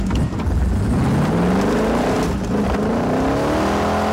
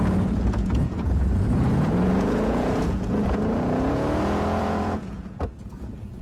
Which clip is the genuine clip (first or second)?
first